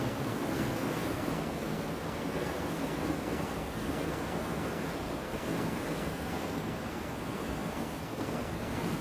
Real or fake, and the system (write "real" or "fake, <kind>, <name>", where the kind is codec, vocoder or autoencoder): fake, codec, SNAC